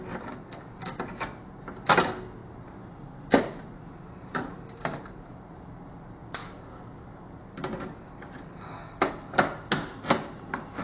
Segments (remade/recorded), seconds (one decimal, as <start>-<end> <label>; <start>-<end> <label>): 0.0-2.4 recorded; 2.4-5.9 remade; 5.9-10.8 recorded